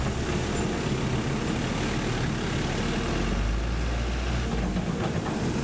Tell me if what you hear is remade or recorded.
recorded